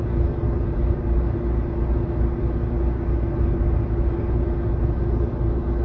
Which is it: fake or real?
real